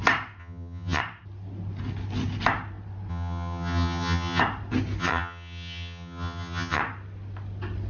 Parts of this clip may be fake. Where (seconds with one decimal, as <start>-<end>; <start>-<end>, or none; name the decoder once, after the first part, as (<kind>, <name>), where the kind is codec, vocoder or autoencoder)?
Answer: 0.4-1.0 (vocoder, HiFi-GAN); 3.1-4.4; 5.0-6.8